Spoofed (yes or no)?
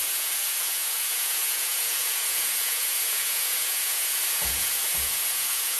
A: yes